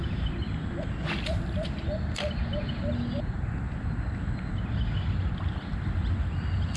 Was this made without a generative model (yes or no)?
yes